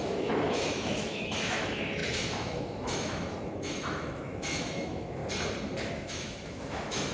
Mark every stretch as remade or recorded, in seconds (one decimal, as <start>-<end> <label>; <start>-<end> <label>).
0.0-5.2 remade; 5.2-5.9 recorded; 5.9-7.1 remade